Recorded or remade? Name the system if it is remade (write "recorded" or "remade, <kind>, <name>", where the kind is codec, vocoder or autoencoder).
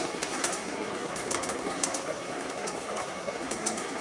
remade, codec, SNAC